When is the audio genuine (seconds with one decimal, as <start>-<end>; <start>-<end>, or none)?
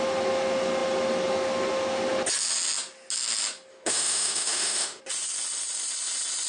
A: 0.0-3.7; 5.0-6.5